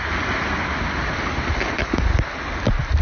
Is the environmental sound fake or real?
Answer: real